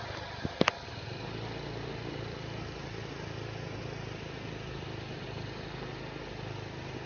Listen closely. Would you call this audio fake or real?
real